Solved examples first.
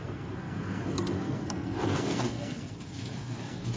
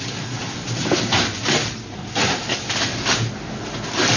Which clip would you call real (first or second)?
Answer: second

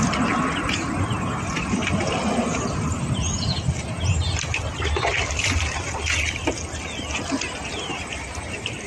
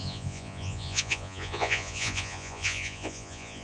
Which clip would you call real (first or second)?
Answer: first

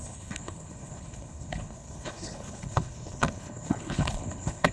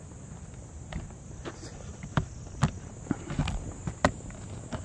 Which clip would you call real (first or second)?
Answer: second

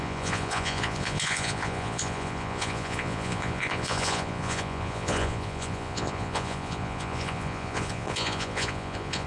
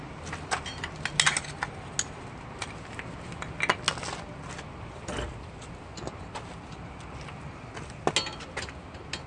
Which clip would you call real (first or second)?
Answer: second